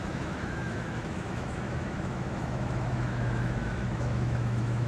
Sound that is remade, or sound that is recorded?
remade